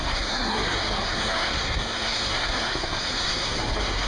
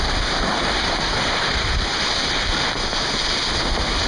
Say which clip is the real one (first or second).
second